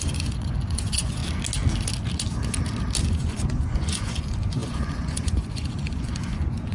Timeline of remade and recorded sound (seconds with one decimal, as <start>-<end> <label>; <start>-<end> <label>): 0.0-1.2 remade; 1.2-3.0 recorded; 3.0-6.7 remade